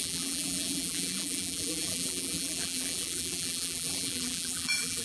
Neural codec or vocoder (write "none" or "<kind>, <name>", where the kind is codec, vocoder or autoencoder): vocoder, BigVGAN v2